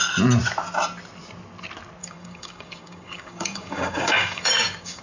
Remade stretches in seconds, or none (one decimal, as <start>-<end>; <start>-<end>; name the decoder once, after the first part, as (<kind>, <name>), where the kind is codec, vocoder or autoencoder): 2.0-5.0 (codec, DAC)